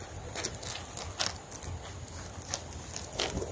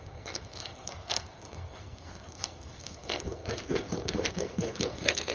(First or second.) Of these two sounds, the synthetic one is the second